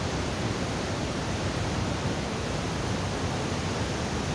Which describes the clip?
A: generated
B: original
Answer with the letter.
B